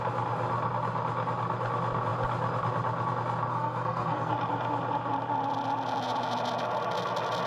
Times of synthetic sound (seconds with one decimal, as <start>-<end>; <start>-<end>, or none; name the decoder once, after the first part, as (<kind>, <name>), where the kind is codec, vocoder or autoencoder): 3.5-4.3 (codec, SNAC)